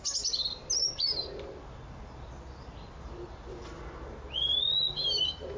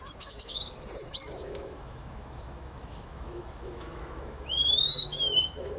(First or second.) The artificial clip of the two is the second